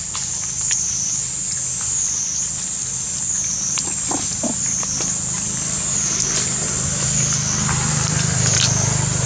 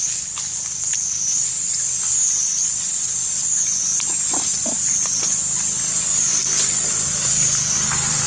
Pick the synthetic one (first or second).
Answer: second